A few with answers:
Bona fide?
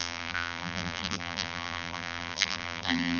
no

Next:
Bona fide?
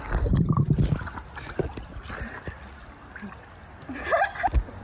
yes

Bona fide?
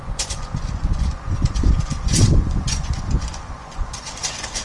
no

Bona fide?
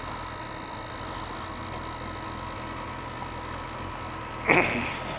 yes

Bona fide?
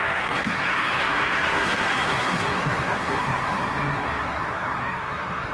no